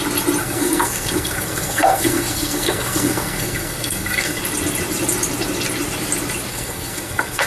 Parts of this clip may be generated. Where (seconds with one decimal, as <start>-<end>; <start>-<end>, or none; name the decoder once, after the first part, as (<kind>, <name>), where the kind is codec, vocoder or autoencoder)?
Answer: 0.4-4.4 (codec, SNAC); 6.5-7.5

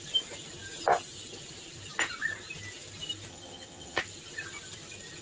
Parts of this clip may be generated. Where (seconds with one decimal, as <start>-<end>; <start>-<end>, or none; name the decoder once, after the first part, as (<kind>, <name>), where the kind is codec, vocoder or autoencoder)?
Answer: 3.3-4.0 (vocoder, HiFi-GAN)